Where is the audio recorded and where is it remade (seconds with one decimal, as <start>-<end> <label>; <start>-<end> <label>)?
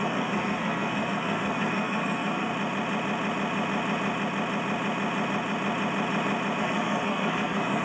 0.0-2.5 remade; 2.5-6.6 recorded; 6.6-7.8 remade